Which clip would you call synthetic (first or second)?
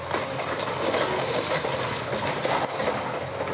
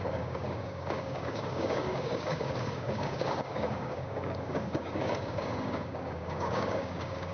second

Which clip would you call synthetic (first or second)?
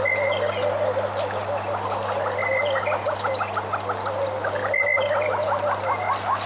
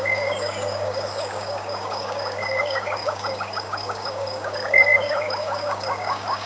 second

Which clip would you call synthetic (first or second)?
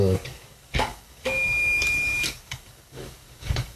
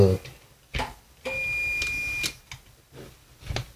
first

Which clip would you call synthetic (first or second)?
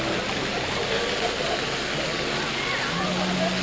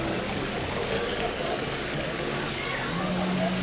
second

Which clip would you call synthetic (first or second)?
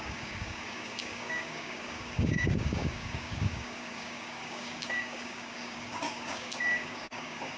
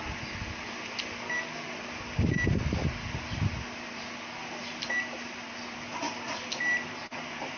first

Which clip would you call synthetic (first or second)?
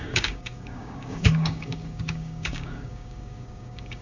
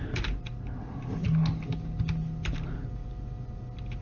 first